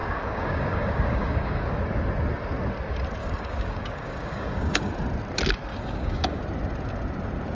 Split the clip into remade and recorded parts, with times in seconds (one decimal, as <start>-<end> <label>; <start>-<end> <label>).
0.0-1.8 remade; 1.8-3.2 recorded; 3.2-4.9 remade; 4.9-5.7 recorded; 5.7-6.4 remade; 6.4-7.5 recorded